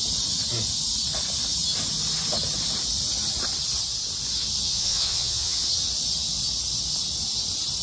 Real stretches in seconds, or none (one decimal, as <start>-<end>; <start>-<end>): 0.0-4.6; 5.7-7.8